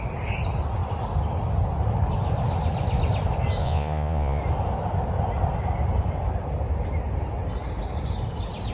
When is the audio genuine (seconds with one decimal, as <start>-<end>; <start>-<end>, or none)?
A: 0.0-3.6; 4.4-8.7